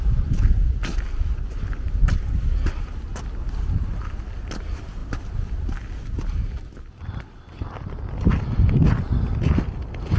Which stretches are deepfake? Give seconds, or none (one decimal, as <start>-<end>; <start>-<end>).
none

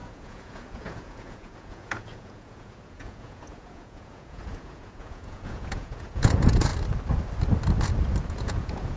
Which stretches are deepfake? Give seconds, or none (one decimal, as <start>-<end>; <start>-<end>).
0.0-6.7; 8.3-9.0